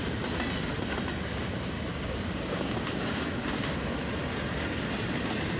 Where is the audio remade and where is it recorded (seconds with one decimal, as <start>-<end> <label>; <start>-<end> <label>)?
0.0-1.9 recorded; 1.9-4.0 remade; 4.0-5.6 recorded